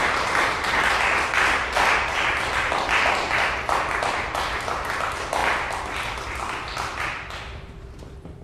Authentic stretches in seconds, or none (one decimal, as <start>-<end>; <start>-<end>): none